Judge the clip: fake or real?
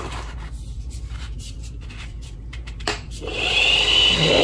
fake